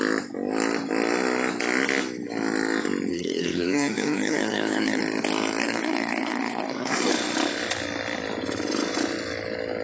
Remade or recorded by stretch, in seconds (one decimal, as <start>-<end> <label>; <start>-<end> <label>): 0.0-3.1 recorded; 3.1-5.0 remade; 5.0-5.6 recorded; 5.6-7.1 remade; 7.1-9.8 recorded